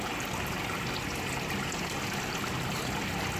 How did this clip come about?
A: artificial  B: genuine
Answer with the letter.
B